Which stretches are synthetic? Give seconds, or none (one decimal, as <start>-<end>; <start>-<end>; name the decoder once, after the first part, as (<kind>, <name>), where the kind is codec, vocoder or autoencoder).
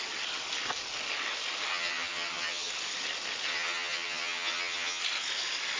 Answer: 1.7-2.7 (vocoder, HiFi-GAN); 3.5-5.0